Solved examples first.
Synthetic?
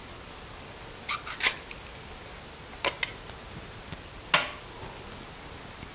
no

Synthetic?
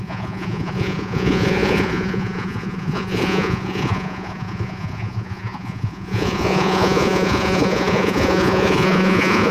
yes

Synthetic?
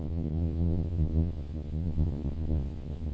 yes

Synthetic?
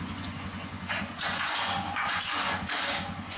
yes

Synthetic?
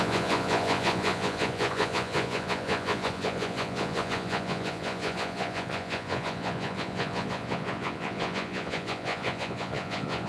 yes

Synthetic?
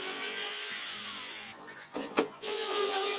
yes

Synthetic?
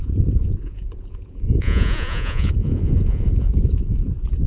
yes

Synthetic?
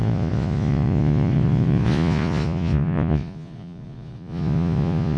yes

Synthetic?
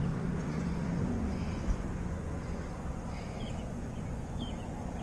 yes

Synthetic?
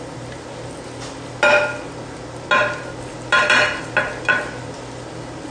no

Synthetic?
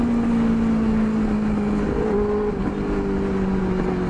no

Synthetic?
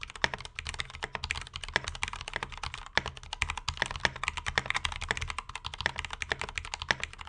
no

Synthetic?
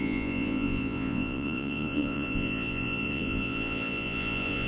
yes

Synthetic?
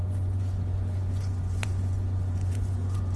yes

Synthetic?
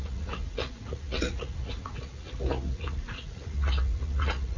yes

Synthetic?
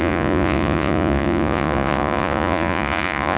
yes